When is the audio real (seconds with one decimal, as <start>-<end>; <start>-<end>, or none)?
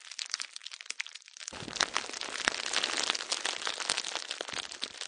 0.0-5.1